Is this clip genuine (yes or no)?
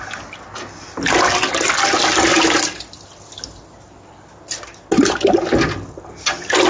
yes